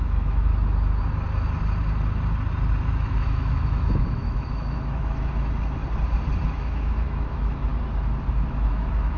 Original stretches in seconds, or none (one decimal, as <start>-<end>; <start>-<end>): 0.5-2.8; 5.8-6.5; 7.7-8.5